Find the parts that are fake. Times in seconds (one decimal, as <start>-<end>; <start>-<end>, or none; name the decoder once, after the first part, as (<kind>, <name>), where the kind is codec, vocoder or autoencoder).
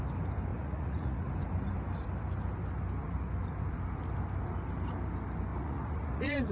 0.5-1.3 (vocoder, Vocos); 5.5-6.5